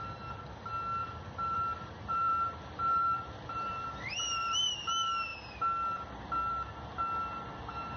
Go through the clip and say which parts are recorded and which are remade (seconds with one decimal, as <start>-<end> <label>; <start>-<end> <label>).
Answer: 0.0-1.0 recorded; 1.0-4.7 remade; 4.7-8.0 recorded